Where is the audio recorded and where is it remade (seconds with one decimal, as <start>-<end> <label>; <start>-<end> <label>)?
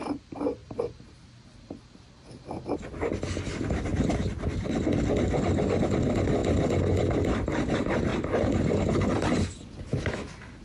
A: 0.0-10.6 recorded